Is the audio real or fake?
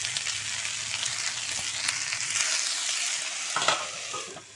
real